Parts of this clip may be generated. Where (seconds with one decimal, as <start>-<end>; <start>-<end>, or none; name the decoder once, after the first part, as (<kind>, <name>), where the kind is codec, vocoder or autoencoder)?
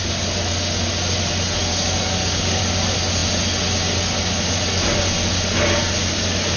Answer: 1.7-2.6 (codec, DAC)